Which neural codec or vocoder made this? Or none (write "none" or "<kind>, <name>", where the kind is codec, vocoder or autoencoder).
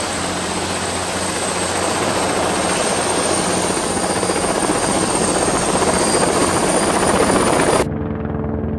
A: none